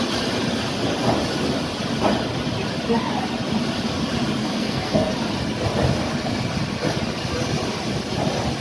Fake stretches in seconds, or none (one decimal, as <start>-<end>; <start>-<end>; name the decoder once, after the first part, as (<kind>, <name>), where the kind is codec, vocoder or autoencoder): 4.4-5.1 (codec, SNAC)